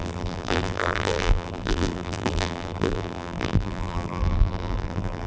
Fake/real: fake